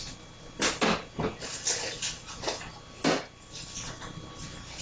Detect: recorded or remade recorded